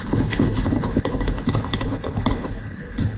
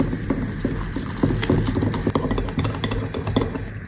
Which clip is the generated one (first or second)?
first